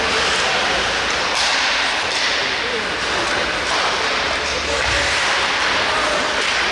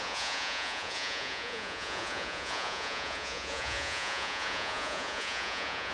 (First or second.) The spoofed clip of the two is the second